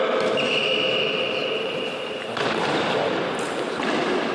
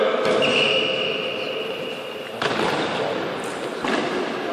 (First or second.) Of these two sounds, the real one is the second